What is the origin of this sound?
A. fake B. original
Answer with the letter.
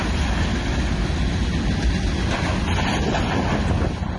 B